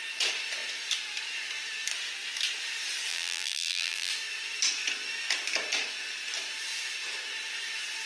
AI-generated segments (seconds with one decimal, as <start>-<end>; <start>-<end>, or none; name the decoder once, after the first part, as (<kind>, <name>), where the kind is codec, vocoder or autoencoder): 3.1-4.1 (vocoder, BigVGAN v2)